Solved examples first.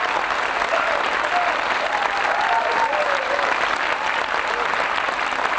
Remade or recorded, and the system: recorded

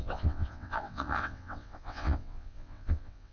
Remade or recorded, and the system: remade, vocoder, WaveNeXt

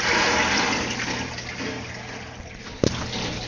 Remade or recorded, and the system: recorded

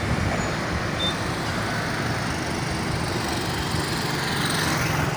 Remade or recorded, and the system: recorded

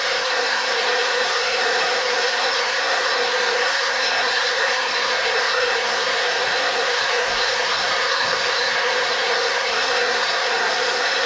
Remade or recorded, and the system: remade, codec, SNAC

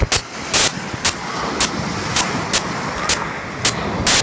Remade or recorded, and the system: recorded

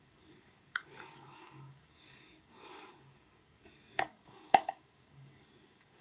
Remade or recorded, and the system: remade, codec, DAC